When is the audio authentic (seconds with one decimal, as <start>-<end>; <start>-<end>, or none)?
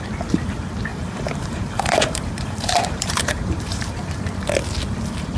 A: 0.0-0.9; 4.1-5.4